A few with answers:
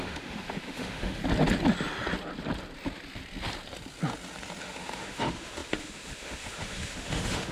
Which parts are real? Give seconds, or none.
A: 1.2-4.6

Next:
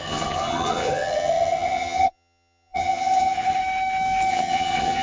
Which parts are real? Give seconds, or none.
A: 3.6-4.3

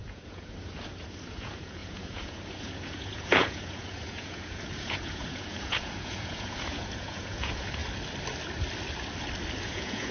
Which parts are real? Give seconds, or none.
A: 7.8-9.6